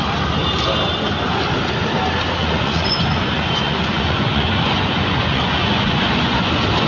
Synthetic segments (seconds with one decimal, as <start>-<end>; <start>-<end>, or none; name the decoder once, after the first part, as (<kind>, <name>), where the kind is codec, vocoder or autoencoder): 2.4-6.5 (vocoder, Vocos)